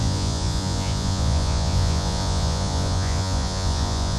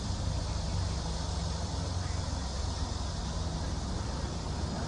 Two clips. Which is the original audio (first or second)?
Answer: second